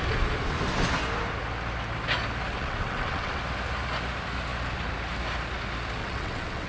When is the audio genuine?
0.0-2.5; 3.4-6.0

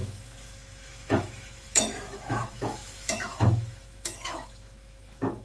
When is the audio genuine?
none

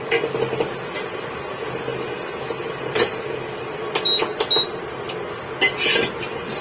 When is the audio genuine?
0.0-6.6